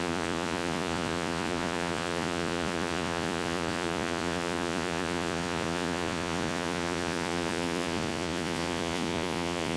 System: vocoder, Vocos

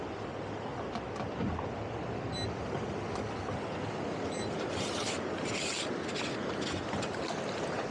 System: none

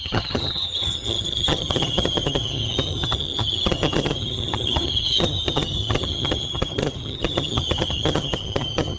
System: vocoder, HiFi-GAN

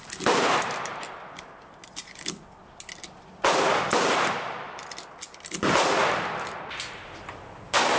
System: none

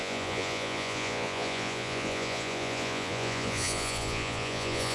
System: vocoder, Vocos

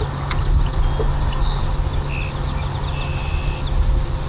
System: none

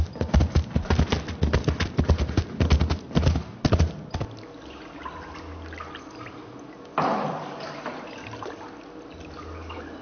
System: none